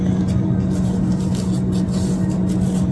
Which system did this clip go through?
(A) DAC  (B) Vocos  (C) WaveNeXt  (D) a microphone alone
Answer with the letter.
D